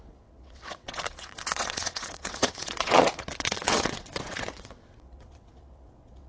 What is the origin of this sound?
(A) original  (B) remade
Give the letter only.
B